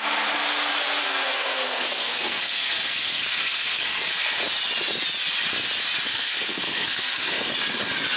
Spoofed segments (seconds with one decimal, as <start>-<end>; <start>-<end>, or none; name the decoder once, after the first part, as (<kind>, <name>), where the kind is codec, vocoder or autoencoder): 1.0-4.4 (codec, SNAC); 6.1-7.5